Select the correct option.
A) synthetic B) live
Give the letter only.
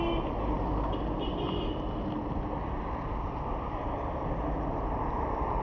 B